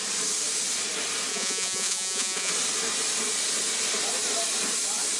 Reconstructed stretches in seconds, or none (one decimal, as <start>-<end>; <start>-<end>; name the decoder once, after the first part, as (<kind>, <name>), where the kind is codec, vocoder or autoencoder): 1.3-2.5 (vocoder, Vocos)